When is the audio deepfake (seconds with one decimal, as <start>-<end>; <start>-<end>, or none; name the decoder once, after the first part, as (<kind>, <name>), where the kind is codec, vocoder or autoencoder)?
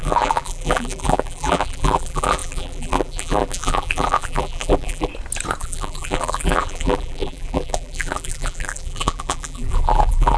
0.0-5.1 (vocoder, BigVGAN v2); 5.6-10.4